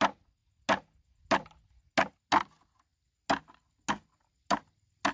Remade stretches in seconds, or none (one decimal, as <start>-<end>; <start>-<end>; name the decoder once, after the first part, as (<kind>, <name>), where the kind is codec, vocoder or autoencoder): none